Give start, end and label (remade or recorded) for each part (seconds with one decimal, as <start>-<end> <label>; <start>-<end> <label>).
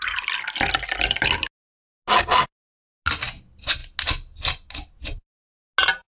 0.0-6.2 recorded